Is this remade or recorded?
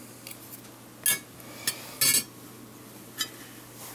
recorded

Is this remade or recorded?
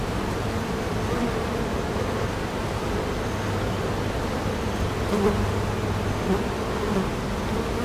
recorded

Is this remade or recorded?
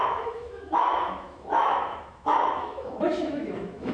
remade